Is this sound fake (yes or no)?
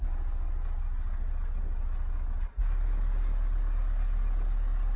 no